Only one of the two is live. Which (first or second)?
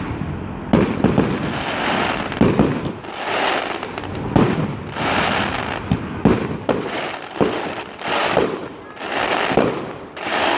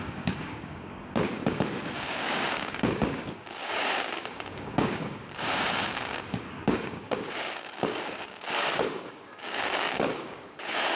first